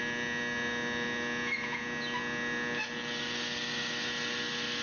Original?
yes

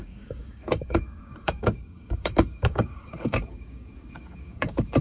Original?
no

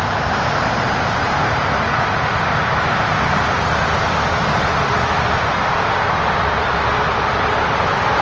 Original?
yes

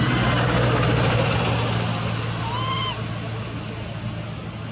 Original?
yes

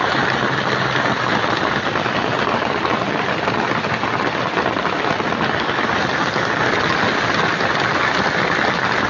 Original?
yes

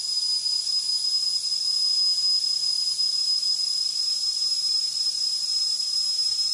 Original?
yes